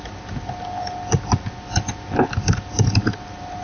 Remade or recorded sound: recorded